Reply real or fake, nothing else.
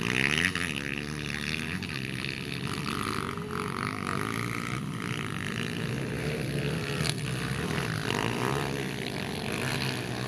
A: real